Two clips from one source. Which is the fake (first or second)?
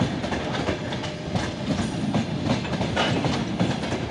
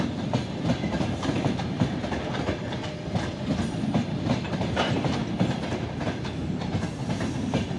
second